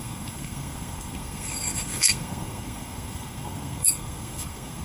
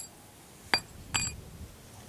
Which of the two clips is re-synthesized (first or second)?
first